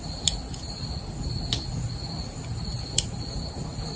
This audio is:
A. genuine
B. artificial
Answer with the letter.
A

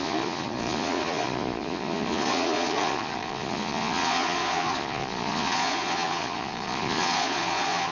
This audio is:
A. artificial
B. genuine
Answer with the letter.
A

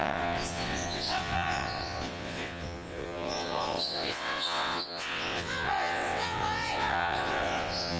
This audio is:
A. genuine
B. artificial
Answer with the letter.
B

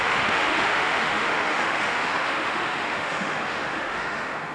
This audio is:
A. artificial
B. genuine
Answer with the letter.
A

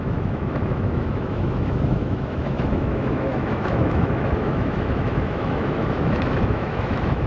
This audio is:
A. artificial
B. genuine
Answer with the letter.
A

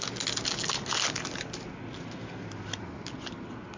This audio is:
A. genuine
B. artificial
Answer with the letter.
A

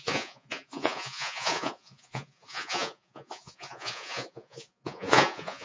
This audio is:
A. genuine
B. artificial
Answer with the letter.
B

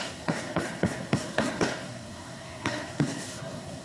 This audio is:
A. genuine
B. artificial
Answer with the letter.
B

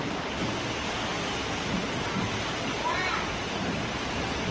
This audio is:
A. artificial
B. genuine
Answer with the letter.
B